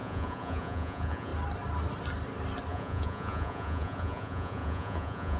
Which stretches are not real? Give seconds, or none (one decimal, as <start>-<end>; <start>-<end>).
0.0-1.3; 2.7-5.4